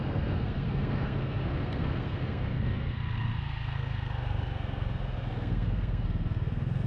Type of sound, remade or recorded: remade